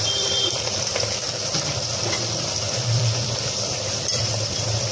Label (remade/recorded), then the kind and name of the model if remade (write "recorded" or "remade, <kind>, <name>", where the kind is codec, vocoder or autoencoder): remade, vocoder, BigVGAN v2